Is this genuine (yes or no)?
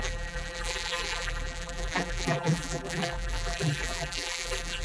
no